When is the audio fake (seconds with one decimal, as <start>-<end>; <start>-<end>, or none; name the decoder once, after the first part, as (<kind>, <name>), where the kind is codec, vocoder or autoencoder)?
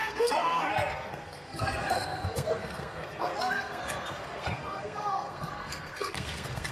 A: 0.0-6.7 (codec, SNAC)